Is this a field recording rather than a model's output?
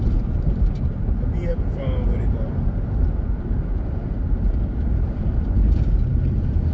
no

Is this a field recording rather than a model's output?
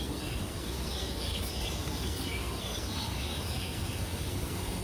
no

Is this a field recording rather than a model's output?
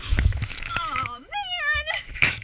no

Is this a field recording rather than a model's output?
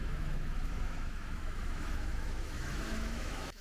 no